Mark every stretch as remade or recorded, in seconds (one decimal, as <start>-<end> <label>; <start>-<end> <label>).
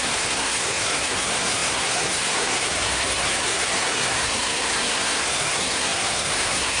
0.0-6.8 remade